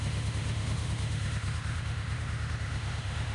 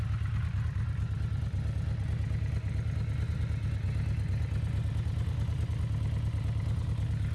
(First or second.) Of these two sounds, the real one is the second